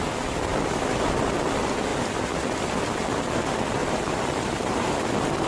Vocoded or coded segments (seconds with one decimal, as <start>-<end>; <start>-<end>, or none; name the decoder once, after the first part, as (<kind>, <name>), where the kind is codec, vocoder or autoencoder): 0.5-1.3 (vocoder, BigVGAN v2); 3.8-5.0